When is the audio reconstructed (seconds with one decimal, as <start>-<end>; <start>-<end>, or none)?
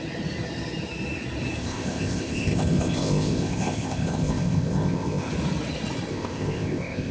1.6-5.3; 6.1-7.1